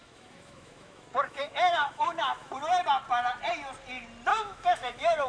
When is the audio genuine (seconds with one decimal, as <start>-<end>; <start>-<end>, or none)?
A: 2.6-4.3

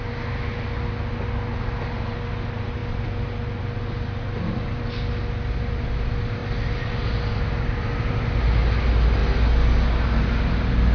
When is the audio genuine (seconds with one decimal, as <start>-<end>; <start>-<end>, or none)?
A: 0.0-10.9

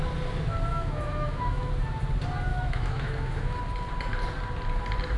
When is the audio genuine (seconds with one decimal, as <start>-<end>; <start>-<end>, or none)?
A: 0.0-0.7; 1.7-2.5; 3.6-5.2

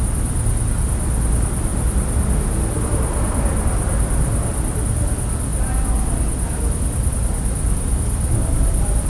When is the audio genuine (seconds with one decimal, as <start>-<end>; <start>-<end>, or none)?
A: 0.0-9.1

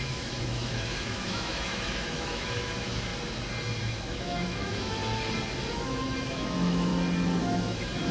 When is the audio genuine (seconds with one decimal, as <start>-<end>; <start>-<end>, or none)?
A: 3.1-3.8; 5.0-5.7; 6.9-7.4

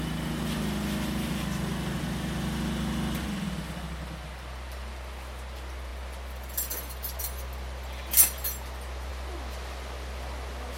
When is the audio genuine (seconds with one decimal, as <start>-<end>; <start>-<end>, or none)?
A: 0.0-10.8

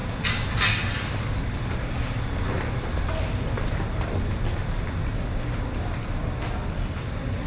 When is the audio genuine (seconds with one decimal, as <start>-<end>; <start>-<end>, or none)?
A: 0.0-7.5